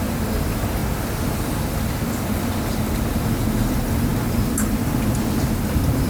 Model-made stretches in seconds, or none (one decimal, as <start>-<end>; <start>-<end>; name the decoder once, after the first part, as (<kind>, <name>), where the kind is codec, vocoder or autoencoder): none